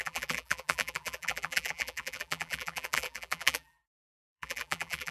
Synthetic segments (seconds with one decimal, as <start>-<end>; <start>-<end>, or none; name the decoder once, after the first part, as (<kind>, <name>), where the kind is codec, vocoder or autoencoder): 0.0-5.1 (vocoder, BigVGAN v2)